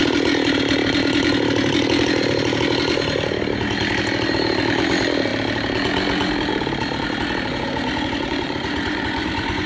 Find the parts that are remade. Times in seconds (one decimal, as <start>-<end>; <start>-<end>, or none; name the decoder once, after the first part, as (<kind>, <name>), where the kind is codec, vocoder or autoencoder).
7.5-9.7 (vocoder, Vocos)